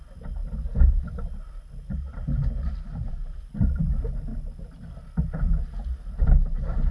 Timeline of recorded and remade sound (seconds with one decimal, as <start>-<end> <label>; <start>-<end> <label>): 0.0-6.9 recorded